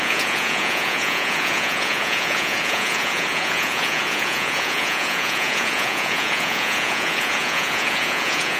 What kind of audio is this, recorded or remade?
remade